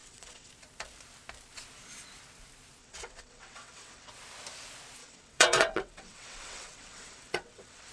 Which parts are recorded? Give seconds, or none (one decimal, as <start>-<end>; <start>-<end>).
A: 0.5-2.8; 4.1-5.0